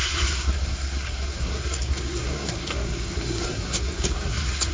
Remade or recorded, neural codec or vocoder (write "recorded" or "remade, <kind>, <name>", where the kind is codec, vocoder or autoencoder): remade, codec, SNAC